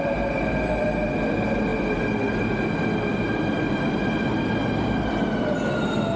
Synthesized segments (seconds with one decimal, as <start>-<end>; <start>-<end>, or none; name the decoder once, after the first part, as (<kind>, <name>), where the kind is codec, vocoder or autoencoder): none